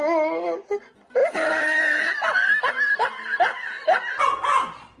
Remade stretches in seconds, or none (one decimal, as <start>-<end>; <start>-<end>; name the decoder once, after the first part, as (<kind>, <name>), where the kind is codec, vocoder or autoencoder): 1.2-4.2 (vocoder, BigVGAN v2)